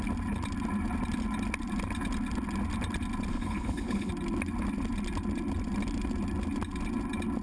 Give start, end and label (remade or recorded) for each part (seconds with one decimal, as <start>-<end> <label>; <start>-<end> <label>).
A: 0.0-3.3 recorded; 3.3-4.1 remade; 4.1-7.4 recorded